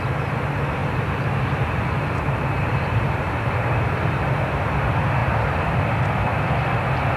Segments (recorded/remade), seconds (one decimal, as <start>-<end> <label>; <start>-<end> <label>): 0.0-0.8 recorded; 0.8-3.8 remade; 3.8-7.2 recorded